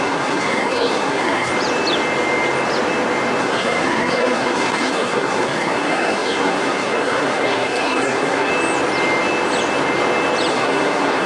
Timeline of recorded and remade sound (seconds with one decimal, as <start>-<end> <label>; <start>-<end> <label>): 0.0-1.5 remade; 1.5-3.4 recorded; 3.4-8.5 remade; 8.5-10.5 recorded; 10.5-11.3 remade